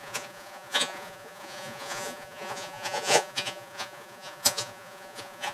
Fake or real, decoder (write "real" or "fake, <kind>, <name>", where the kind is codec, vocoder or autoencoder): fake, vocoder, Vocos